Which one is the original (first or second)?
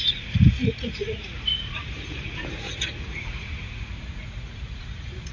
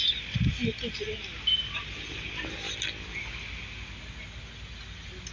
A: second